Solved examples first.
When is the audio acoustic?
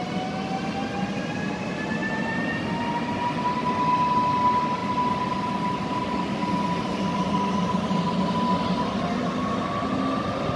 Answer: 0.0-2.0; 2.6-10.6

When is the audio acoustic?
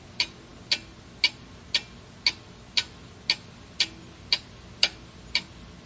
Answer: 0.0-5.9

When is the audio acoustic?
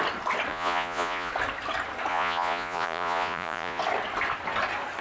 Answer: 0.0-0.5; 1.3-2.1; 3.8-5.0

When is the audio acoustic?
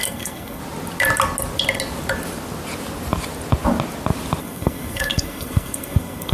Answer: 0.6-4.4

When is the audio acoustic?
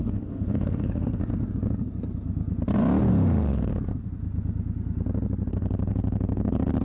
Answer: 1.2-3.1; 3.7-5.5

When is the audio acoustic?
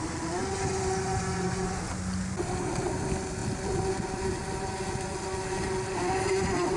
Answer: 0.0-6.8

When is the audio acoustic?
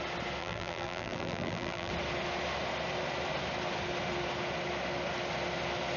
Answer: 0.0-0.4; 1.9-6.0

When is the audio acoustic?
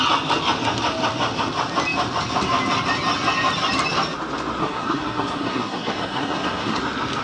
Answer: 0.0-4.6; 6.8-7.2